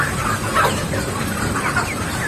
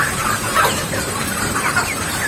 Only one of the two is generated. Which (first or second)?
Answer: second